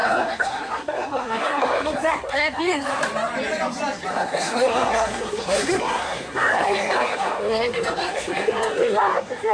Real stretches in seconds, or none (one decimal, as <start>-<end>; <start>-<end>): 3.0-4.1